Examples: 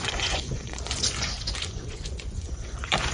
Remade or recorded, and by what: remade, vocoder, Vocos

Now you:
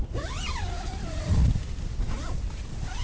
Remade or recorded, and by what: recorded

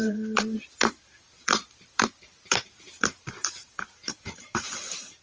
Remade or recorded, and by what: remade, vocoder, BigVGAN v2